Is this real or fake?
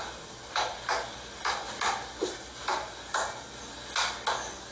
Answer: real